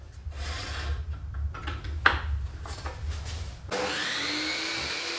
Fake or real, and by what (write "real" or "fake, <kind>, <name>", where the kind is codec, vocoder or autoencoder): real